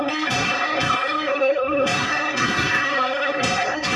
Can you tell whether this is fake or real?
fake